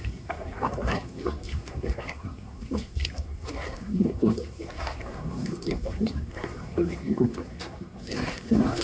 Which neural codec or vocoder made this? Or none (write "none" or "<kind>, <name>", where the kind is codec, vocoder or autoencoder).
codec, SNAC